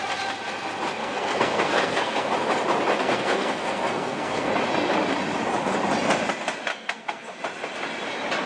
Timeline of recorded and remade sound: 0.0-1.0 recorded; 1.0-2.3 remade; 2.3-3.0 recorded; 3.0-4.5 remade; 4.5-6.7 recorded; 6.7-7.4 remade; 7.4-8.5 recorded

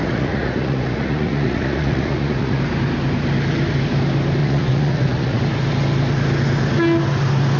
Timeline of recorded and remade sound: 0.0-2.6 remade; 2.6-4.4 recorded; 4.4-5.4 remade; 5.4-7.6 recorded

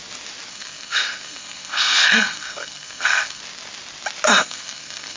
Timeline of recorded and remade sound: 0.0-0.5 recorded; 0.5-3.4 remade; 3.4-4.4 recorded; 4.4-5.2 remade